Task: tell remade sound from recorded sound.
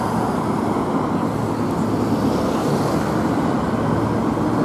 recorded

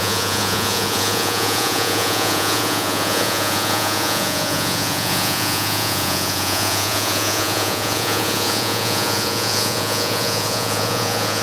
remade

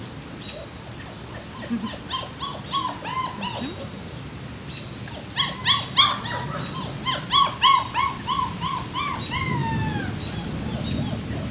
recorded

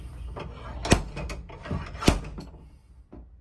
recorded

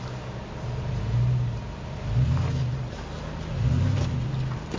recorded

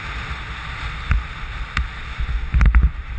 recorded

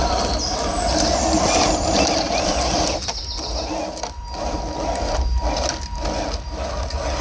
recorded